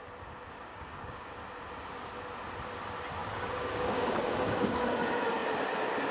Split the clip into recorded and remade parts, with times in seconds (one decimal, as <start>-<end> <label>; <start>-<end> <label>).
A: 0.0-0.7 recorded; 0.7-1.3 remade; 1.3-3.2 recorded; 3.2-5.0 remade; 5.0-6.1 recorded